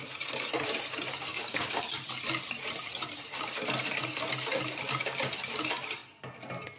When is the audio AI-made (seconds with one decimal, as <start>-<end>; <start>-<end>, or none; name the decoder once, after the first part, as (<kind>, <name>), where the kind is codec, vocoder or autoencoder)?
1.3-1.8 (codec, DAC)